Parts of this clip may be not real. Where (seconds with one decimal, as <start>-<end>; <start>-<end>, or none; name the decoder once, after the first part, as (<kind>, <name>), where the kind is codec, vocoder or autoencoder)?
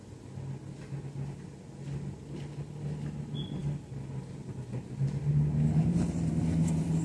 none